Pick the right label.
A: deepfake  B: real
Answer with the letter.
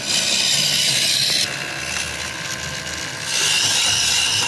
B